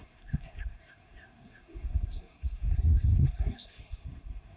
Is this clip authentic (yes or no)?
no